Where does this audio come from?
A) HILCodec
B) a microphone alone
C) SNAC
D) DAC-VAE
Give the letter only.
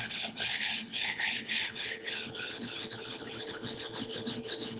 A